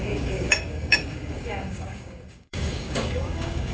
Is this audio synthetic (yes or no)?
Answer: yes